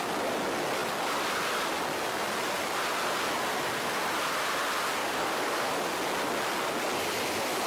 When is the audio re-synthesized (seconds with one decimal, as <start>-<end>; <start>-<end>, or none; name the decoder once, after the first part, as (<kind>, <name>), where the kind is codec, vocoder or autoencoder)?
5.0-5.7 (codec, DAC)